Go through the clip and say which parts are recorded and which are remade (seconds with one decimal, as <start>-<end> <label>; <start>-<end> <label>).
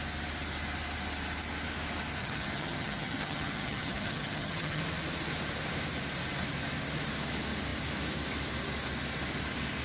0.0-2.2 recorded; 2.2-4.8 remade; 4.8-9.8 recorded